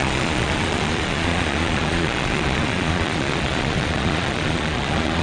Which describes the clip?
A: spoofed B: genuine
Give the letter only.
A